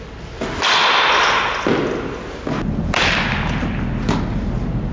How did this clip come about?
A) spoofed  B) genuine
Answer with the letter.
B